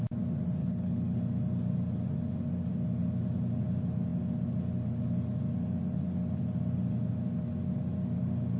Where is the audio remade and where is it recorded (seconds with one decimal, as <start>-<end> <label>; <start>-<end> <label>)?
0.0-0.6 recorded; 0.6-1.2 remade; 1.2-8.6 recorded